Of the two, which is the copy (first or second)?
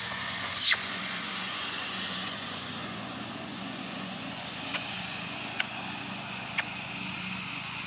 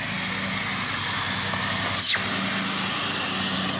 first